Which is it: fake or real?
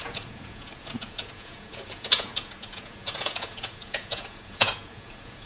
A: fake